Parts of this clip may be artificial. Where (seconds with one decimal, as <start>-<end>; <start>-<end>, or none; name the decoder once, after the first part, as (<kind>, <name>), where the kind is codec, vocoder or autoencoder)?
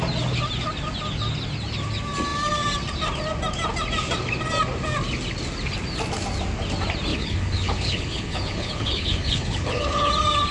7.1-10.1 (codec, HILCodec)